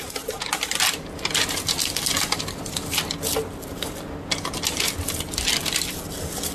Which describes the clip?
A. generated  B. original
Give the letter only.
B